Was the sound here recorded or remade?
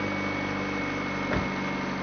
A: recorded